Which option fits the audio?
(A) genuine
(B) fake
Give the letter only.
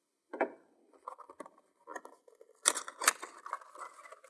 A